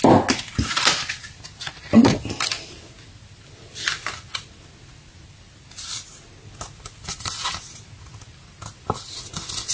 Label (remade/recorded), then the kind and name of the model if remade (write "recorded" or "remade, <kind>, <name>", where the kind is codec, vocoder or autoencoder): recorded